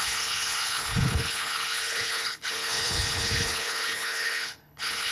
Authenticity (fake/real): fake